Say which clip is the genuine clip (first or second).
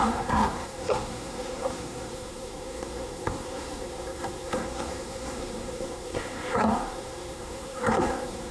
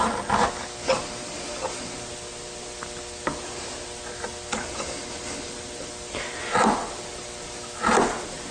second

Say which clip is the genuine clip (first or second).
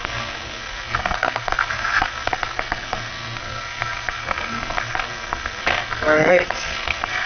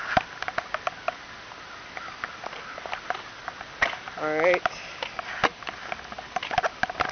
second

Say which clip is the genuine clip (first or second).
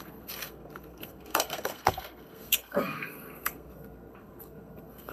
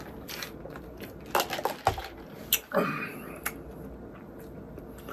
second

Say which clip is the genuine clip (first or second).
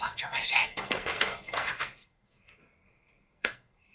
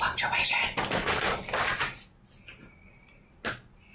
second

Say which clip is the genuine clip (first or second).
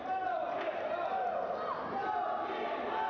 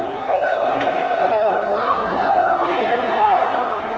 first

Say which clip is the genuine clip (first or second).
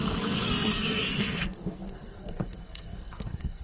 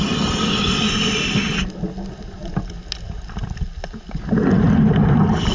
second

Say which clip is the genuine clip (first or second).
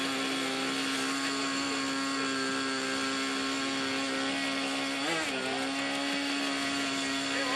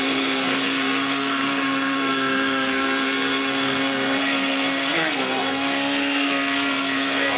first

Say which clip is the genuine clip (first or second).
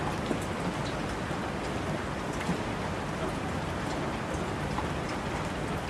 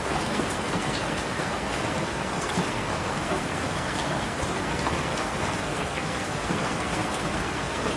first